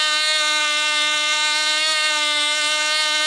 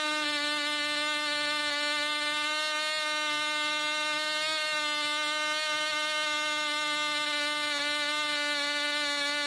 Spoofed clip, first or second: first